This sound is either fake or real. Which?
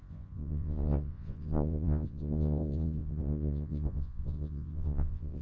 fake